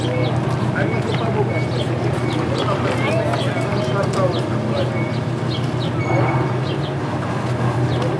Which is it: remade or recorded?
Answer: recorded